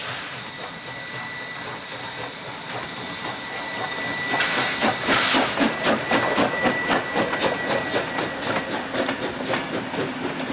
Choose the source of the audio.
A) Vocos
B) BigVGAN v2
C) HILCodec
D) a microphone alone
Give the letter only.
D